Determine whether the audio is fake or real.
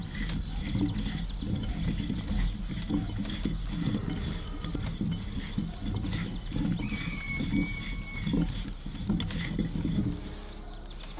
real